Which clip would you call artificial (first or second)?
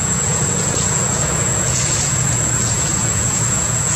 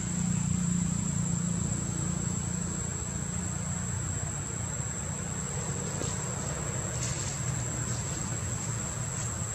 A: first